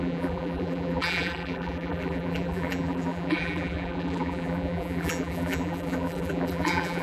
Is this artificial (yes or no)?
yes